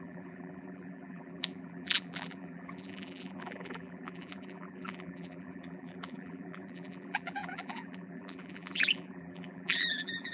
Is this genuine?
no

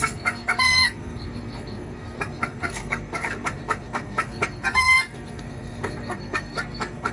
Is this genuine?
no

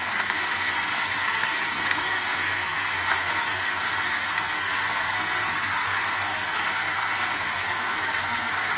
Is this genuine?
no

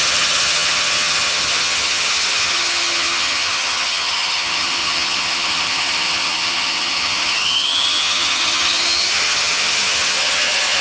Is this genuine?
no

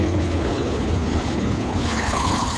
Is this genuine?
no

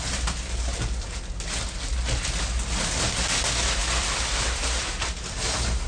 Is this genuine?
yes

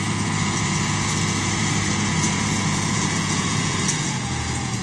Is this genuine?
no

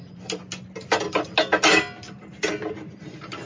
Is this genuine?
yes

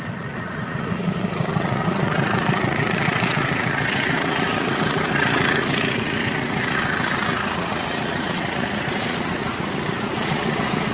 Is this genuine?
no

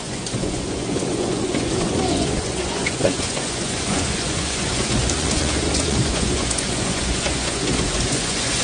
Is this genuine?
no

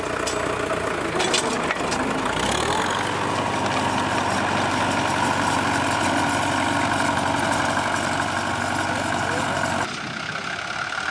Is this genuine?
yes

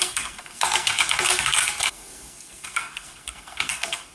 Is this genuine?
no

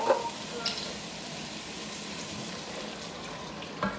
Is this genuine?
yes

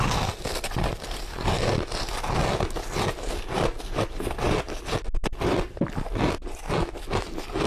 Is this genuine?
yes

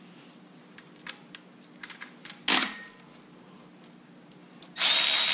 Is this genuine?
yes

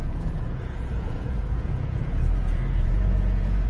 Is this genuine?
no